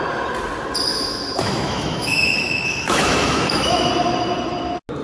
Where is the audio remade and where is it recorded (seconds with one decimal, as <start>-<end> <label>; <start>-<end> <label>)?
0.0-0.9 recorded; 0.9-3.9 remade; 3.9-5.0 recorded